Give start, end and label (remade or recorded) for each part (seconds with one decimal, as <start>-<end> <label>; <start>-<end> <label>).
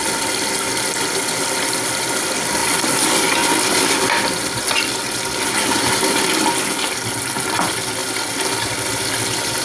0.0-9.6 recorded